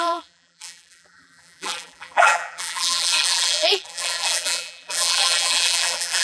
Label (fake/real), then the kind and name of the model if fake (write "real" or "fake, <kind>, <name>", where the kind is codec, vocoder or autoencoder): fake, vocoder, BigVGAN v2